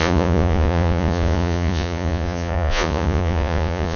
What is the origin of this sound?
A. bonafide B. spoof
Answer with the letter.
B